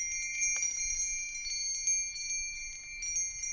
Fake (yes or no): no